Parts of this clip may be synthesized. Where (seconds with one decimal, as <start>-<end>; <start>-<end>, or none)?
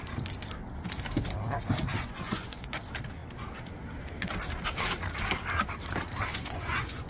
1.9-2.8; 6.3-7.1